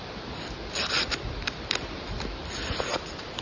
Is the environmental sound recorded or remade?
recorded